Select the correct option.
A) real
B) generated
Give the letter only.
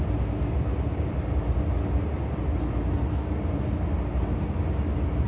A